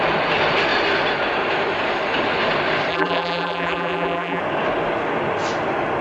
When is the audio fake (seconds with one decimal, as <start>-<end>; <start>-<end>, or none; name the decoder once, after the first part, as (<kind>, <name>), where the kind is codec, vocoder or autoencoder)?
2.9-4.4 (vocoder, BigVGAN v2)